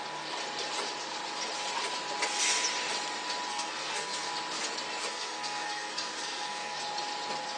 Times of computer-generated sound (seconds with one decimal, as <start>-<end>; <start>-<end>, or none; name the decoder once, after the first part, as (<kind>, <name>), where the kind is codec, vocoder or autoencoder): 3.5-4.3 (codec, SNAC); 5.0-6.8